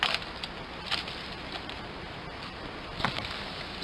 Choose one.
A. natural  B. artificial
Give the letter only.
A